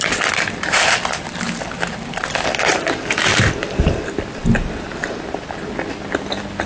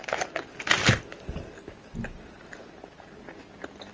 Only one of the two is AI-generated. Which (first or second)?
first